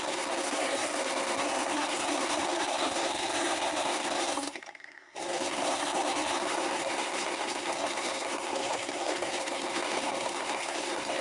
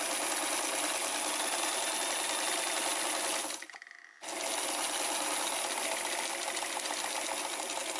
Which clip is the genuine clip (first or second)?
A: second